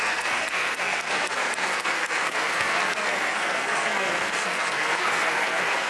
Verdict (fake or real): fake